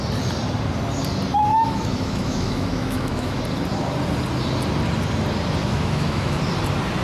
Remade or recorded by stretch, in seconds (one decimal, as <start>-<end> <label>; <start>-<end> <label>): 0.0-1.5 recorded; 1.5-3.4 remade; 3.4-5.6 recorded; 5.6-6.4 remade; 6.4-7.0 recorded